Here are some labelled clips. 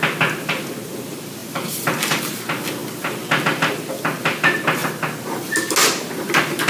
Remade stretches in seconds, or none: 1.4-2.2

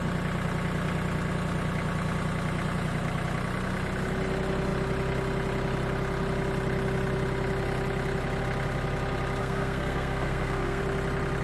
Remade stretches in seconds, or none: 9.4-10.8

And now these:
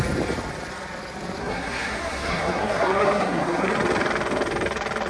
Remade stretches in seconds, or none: 1.4-3.7

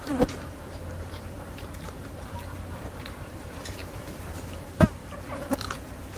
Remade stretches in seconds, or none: 0.0-6.2